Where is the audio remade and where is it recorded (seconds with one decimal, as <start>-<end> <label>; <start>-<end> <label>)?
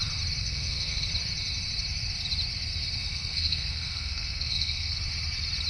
0.0-0.4 recorded; 0.4-1.1 remade; 1.1-3.1 recorded; 3.1-5.0 remade; 5.0-5.7 recorded